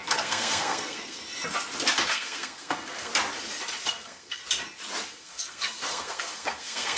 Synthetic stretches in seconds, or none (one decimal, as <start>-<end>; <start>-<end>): 0.0-1.2; 2.1-3.1; 3.9-4.4; 5.1-7.0